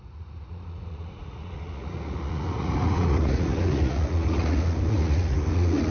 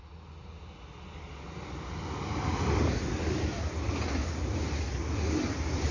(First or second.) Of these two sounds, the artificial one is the first